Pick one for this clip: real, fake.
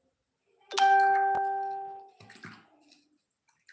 real